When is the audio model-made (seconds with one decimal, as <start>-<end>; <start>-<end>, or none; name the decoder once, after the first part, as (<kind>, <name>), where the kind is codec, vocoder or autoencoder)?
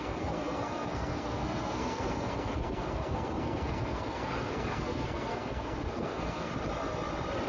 0.0-6.5 (codec, SNAC)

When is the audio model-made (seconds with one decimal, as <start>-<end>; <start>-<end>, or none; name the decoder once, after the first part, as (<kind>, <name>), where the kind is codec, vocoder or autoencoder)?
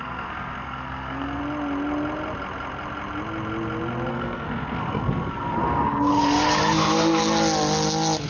0.0-1.4 (codec, SNAC); 4.1-6.1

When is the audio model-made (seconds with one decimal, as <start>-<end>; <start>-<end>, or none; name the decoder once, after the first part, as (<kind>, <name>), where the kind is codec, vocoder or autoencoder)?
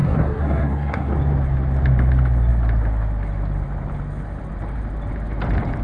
0.0-1.1 (codec, SNAC)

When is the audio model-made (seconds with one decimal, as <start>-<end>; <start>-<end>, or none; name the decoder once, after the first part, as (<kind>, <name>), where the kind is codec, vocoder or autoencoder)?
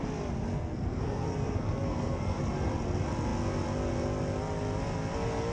0.5-2.4 (codec, SNAC)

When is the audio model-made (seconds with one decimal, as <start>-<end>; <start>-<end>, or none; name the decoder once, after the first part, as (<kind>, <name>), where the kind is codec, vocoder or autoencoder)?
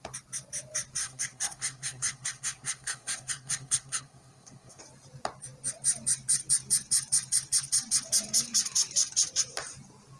1.0-4.8 (codec, SNAC)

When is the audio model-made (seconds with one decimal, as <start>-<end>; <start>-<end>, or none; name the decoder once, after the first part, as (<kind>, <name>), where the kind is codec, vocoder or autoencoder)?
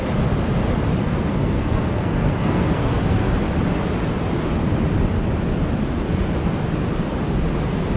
1.0-3.3 (codec, SNAC)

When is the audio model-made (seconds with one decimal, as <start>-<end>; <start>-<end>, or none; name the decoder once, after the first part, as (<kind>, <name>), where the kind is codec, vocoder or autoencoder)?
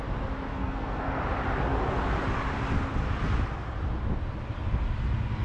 0.5-1.2 (codec, SNAC)